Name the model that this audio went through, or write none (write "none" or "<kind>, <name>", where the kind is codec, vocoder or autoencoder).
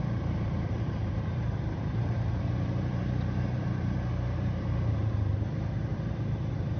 vocoder, BigVGAN v2